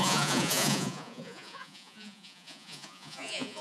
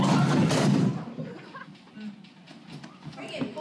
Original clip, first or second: second